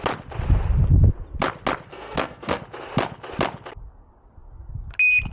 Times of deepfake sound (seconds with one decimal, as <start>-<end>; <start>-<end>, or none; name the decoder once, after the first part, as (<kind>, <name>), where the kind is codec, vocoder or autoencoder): 1.9-2.6 (codec, SNAC)